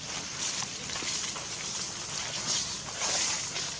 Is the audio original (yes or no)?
yes